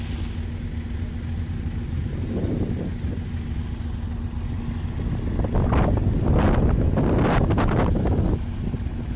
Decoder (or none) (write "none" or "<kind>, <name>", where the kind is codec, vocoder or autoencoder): none